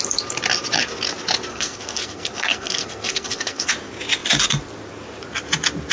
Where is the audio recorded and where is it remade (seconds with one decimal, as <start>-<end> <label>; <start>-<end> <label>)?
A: 0.0-1.5 recorded; 1.5-3.7 remade; 3.7-5.9 recorded